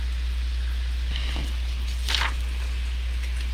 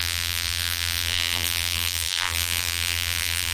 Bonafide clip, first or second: first